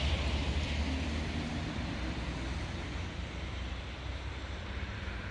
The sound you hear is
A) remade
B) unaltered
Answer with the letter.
A